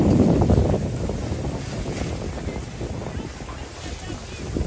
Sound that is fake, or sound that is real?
real